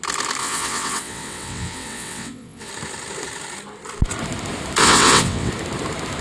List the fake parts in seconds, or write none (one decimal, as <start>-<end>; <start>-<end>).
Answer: 0.4-2.7; 4.8-5.5